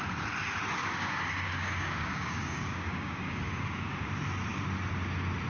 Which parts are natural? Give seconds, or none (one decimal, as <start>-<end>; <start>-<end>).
0.0-0.8; 4.1-5.5